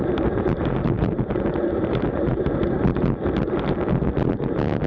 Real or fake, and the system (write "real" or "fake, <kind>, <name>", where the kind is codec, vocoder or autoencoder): fake, vocoder, BigVGAN v2